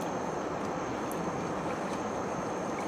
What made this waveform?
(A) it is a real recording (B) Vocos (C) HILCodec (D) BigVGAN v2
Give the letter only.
A